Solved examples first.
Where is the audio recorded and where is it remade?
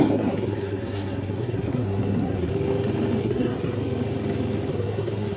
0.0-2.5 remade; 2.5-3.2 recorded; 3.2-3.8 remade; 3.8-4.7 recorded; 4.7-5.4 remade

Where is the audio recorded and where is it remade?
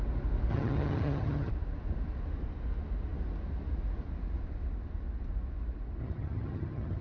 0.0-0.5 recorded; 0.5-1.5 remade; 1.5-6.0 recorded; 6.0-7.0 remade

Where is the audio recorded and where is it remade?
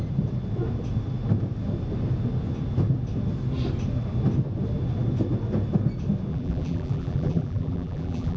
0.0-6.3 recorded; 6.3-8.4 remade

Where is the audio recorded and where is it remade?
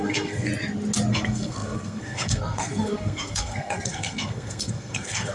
0.0-0.5 remade; 0.5-1.1 recorded; 1.1-5.3 remade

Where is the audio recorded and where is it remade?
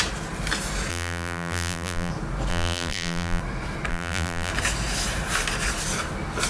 0.0-0.9 recorded; 0.9-2.1 remade; 2.1-2.5 recorded; 2.5-3.4 remade; 3.4-3.9 recorded; 3.9-4.5 remade; 4.5-6.5 recorded